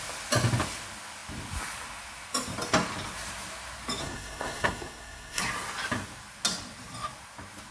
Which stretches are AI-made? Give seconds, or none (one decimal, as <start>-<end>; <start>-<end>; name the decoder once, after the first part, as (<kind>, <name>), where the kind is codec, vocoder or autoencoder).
4.0-5.4 (codec, SNAC)

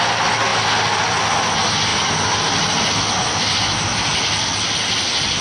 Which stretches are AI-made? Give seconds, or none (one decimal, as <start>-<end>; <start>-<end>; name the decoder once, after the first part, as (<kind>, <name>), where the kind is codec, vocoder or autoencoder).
none

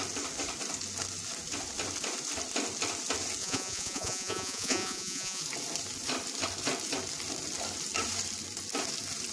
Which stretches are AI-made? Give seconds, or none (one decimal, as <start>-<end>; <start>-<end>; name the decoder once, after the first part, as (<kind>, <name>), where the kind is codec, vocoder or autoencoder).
3.4-5.4 (vocoder, Vocos)